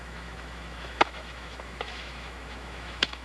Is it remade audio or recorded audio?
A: remade